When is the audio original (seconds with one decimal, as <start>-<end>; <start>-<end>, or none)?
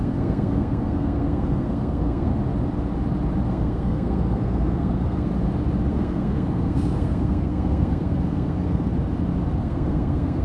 2.3-3.5; 5.3-5.9; 8.9-9.6